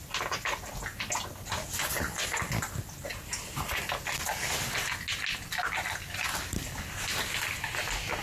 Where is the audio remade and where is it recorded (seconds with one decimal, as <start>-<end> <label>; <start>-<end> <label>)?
0.0-8.2 recorded